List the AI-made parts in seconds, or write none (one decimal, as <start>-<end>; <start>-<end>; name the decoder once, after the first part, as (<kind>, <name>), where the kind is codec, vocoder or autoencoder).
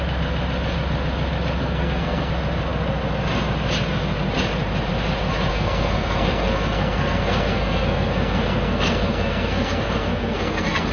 1.6-2.3 (codec, SNAC); 5.5-10.9